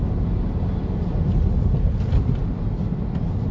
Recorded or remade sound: recorded